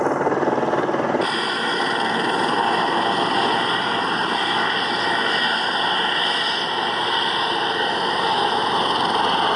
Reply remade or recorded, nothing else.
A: recorded